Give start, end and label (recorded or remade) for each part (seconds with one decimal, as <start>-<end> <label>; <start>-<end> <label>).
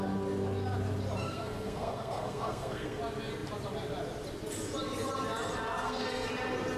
0.0-1.2 recorded; 1.2-3.0 remade; 3.0-5.8 recorded; 5.8-6.3 remade; 6.3-6.8 recorded